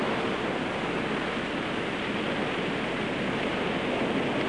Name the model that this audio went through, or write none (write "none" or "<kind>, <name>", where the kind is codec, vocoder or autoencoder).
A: none